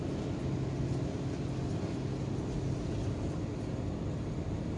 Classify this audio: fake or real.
real